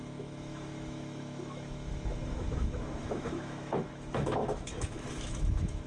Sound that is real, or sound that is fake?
fake